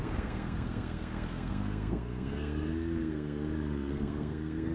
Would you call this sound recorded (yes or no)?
no